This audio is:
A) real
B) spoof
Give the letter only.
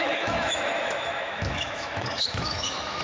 B